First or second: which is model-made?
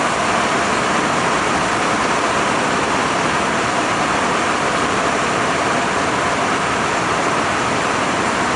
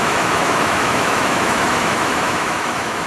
second